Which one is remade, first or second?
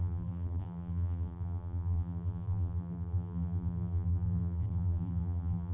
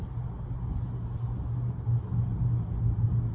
first